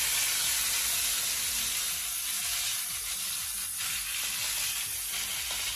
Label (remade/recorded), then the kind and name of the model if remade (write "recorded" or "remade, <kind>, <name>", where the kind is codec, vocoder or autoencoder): recorded